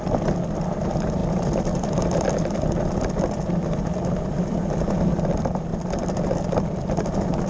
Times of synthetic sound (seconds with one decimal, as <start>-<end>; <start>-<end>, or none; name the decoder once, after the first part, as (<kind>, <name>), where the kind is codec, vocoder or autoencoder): none